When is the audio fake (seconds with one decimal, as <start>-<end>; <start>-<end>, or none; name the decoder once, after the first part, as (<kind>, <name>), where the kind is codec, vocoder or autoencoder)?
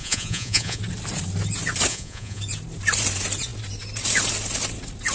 0.0-0.8 (vocoder, Vocos); 1.9-2.4